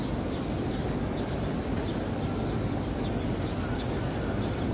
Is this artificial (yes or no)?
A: no